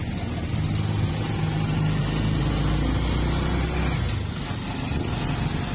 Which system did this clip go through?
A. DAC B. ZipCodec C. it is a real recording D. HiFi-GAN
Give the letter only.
C